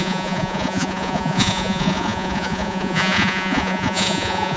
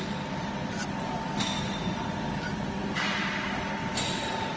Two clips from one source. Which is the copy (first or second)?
first